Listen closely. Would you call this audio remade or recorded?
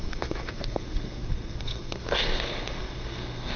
remade